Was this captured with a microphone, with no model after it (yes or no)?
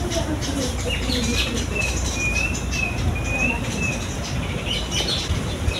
no